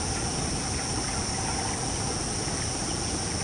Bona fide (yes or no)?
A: yes